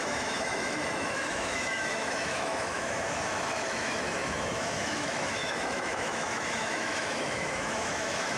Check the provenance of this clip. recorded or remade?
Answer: remade